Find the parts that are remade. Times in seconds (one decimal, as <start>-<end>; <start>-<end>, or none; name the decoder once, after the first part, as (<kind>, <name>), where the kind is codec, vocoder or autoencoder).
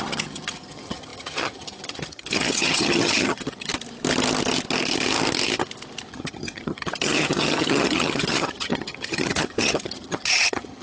0.0-3.7 (vocoder, HiFi-GAN); 6.1-10.8